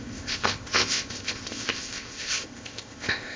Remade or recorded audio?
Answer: remade